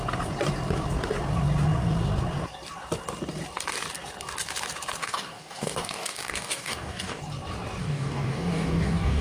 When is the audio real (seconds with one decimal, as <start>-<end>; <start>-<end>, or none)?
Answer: 0.0-5.0; 7.2-7.8